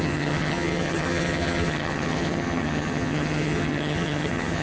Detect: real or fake fake